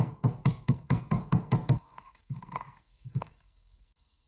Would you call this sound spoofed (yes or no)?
yes